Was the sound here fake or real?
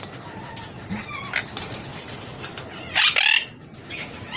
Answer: real